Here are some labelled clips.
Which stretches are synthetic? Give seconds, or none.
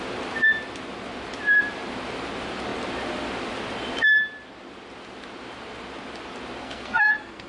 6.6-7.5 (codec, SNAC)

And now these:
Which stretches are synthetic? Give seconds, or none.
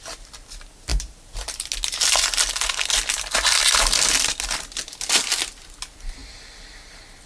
none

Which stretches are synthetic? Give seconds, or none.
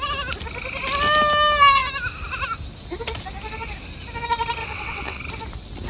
4.6-5.2 (vocoder, WaveNeXt)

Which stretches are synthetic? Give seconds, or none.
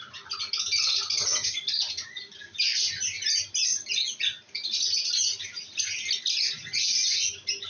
none